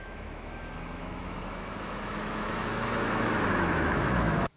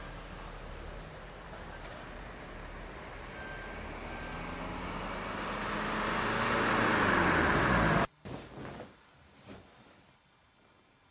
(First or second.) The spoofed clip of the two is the first